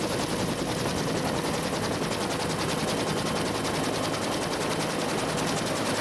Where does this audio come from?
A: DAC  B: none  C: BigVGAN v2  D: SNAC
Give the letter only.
B